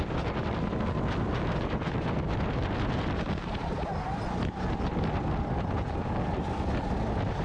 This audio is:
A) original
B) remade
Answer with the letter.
A